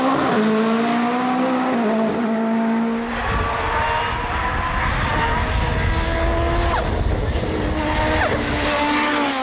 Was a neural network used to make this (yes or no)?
no